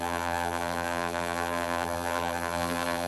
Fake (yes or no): yes